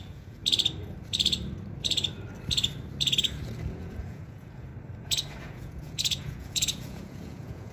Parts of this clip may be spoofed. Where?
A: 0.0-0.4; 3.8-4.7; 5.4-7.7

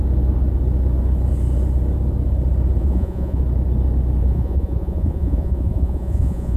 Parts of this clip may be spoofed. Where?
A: 2.8-3.4; 4.2-6.6

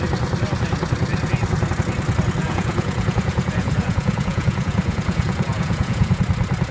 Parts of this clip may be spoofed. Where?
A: 2.4-6.2

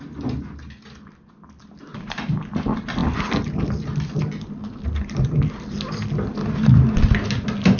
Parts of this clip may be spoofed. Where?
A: none

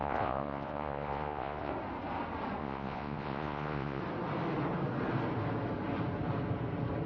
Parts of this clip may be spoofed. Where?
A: 0.0-1.7; 2.6-4.0

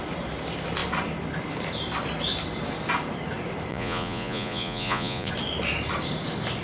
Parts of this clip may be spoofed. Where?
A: 3.7-5.3